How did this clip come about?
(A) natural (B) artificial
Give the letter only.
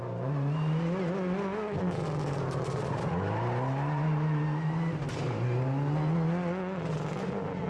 A